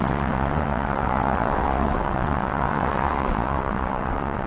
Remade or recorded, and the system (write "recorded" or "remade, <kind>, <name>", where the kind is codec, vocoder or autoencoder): remade, vocoder, WaveNeXt